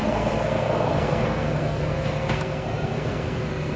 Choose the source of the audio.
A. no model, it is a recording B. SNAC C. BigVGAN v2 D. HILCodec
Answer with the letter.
B